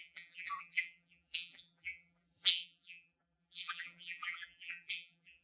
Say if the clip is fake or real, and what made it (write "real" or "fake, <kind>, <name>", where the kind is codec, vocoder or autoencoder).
fake, vocoder, BigVGAN v2